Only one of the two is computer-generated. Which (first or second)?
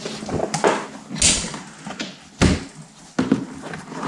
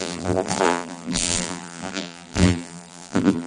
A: second